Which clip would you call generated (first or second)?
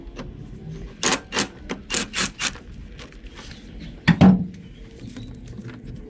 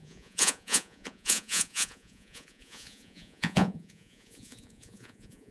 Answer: second